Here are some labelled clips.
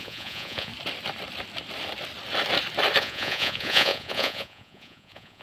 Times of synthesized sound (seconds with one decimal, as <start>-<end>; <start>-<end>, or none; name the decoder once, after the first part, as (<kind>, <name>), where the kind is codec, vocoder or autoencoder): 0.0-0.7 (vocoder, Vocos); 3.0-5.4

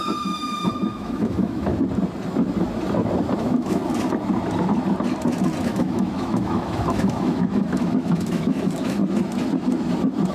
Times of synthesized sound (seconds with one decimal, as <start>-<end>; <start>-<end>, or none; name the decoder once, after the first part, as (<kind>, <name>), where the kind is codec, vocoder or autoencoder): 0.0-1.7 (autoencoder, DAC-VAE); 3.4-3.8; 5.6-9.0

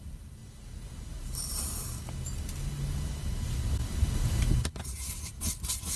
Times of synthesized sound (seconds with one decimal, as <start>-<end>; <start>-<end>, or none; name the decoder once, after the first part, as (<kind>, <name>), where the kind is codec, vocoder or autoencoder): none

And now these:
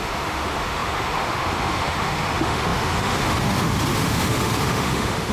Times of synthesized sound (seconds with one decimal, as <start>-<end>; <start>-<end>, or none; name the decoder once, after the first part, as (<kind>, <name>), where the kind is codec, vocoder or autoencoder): 0.0-5.3 (autoencoder, DAC-VAE)